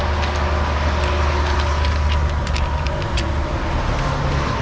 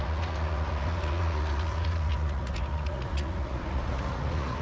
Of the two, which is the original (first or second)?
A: first